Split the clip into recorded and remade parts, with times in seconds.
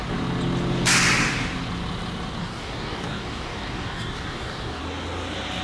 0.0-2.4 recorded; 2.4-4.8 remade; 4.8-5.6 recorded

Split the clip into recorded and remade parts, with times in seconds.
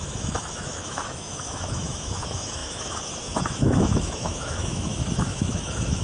0.0-6.0 remade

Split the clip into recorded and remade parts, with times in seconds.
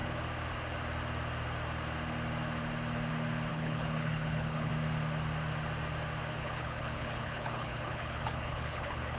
0.0-3.5 recorded; 3.5-4.7 remade; 4.7-6.4 recorded; 6.4-9.2 remade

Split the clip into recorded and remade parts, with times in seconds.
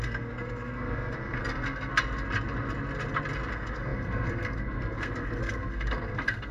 0.0-1.9 remade; 1.9-3.5 recorded; 3.5-6.5 remade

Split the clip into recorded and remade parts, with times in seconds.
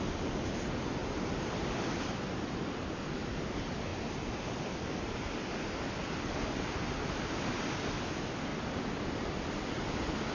0.0-1.0 recorded; 1.0-2.1 remade; 2.1-8.5 recorded; 8.5-9.1 remade; 9.1-10.3 recorded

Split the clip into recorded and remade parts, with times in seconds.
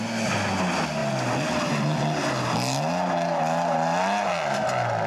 0.0-5.1 recorded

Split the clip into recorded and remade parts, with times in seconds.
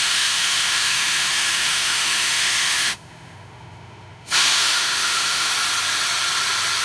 0.0-5.5 remade; 5.5-6.8 recorded